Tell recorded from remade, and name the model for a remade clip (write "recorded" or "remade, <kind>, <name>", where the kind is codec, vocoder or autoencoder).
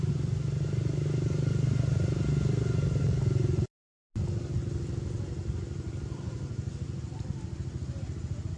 recorded